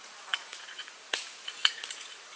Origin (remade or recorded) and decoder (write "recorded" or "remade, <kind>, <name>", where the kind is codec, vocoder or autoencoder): remade, vocoder, Vocos